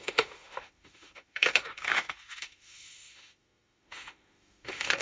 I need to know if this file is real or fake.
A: fake